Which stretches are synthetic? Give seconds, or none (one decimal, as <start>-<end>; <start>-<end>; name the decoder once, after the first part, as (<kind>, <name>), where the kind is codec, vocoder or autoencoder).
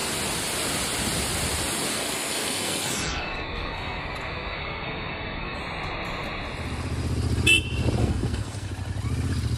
1.9-5.6 (codec, SNAC); 8.0-8.7